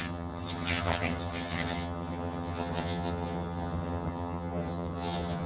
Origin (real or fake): fake